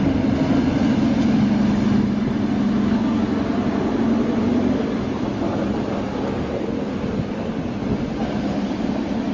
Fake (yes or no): no